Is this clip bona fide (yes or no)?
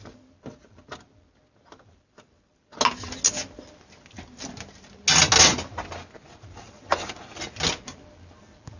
yes